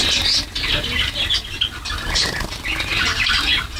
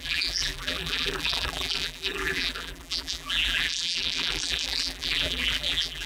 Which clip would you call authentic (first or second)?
first